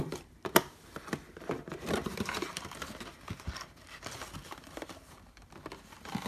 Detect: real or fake fake